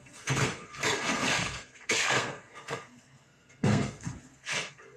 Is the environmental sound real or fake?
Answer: fake